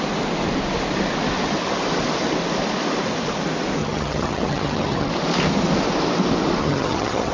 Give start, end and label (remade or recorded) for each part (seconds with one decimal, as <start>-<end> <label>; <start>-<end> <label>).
0.0-3.8 recorded; 3.8-5.1 remade; 5.1-6.6 recorded; 6.6-7.3 remade